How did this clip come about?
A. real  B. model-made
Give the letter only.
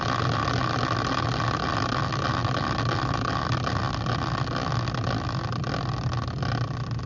A